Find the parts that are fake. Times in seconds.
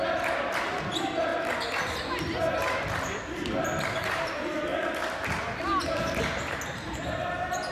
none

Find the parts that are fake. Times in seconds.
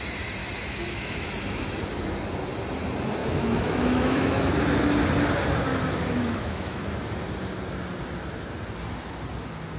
0.4-1.3; 3.2-4.5; 5.7-6.8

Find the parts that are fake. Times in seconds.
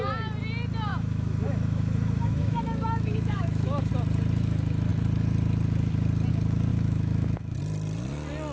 0.9-3.9; 6.7-7.6